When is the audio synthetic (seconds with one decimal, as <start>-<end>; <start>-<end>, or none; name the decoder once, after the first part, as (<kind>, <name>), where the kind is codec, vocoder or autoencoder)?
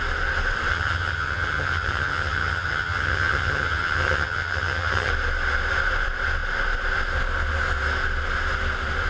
0.7-5.1 (vocoder, HiFi-GAN)